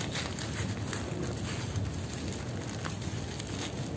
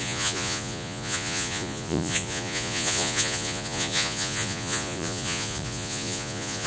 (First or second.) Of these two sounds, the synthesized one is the second